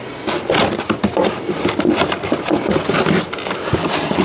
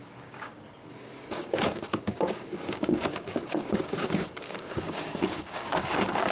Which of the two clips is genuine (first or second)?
first